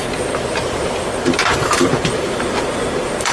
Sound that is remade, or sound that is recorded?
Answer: remade